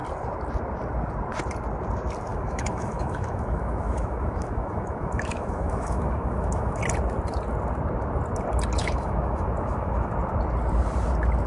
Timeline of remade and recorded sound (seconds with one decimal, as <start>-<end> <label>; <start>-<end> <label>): 0.0-2.3 recorded; 2.3-6.8 remade; 6.8-8.8 recorded; 8.8-10.1 remade; 10.1-11.5 recorded